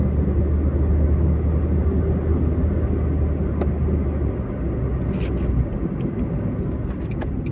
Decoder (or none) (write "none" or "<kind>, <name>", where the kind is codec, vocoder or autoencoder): none